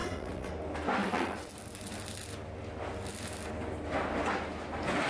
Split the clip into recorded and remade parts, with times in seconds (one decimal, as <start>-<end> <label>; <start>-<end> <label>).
0.0-0.5 remade; 0.5-1.0 recorded; 1.0-1.5 remade; 1.5-5.1 recorded